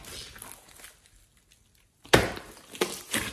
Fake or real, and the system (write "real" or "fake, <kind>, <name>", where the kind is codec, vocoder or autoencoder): real